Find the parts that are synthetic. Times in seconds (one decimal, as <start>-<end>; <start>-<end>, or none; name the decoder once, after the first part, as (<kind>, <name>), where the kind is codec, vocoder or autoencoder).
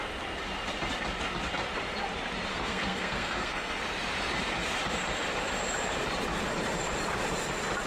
2.5-3.8 (codec, SNAC)